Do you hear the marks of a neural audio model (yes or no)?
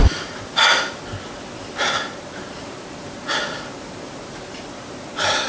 no